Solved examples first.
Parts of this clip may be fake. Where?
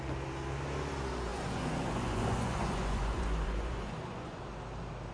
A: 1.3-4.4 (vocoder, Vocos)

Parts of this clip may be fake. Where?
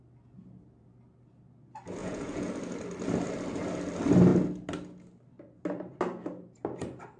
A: 2.0-2.5 (vocoder, Vocos)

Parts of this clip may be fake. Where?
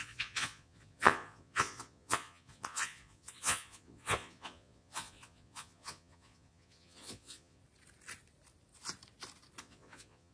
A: 0.0-7.6 (vocoder, Vocos); 9.6-10.3